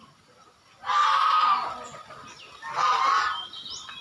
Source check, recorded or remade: recorded